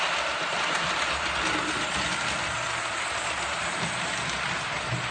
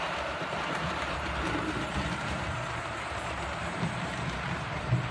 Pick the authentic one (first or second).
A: first